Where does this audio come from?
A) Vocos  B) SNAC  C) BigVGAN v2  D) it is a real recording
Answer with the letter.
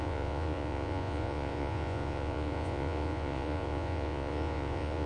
A